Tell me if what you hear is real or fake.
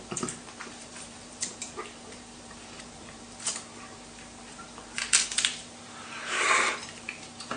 fake